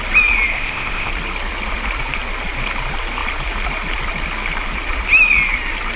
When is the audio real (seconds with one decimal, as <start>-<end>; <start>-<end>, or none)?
0.0-0.5; 1.1-6.0